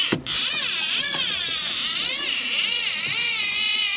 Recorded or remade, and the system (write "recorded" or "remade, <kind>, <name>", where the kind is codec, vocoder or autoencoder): remade, vocoder, Vocos